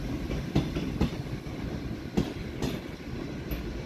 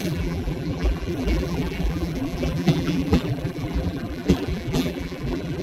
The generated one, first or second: second